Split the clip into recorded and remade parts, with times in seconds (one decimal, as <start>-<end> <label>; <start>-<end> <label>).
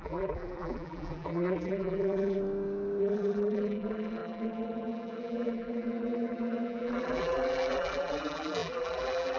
0.0-2.4 remade; 2.4-3.0 recorded; 3.0-9.4 remade